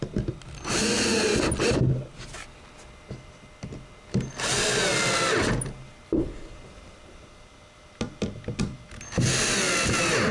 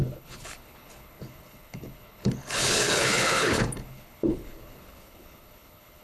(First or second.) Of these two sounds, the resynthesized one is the second